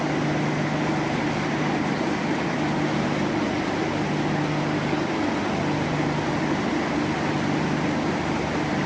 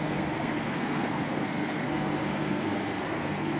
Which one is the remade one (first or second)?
second